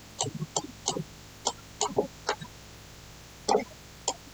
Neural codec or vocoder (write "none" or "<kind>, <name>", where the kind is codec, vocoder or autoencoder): none